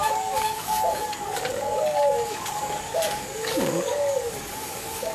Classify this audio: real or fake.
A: fake